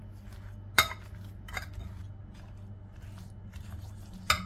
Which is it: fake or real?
real